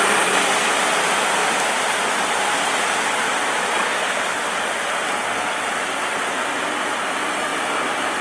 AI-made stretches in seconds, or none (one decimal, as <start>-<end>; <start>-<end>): none

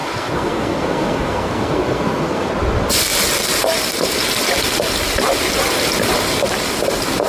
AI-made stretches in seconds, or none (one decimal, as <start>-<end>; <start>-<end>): 0.0-2.5

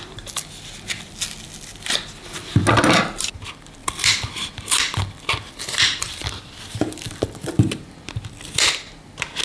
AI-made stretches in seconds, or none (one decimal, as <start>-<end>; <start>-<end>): 3.8-8.0

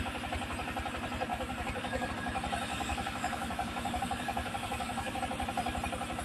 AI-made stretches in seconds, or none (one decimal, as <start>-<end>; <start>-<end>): 1.3-2.1; 2.7-5.2

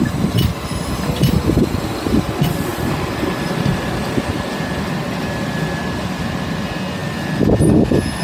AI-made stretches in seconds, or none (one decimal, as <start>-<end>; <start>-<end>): none